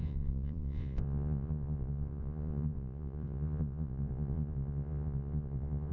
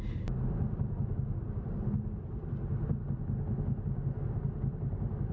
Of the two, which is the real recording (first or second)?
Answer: second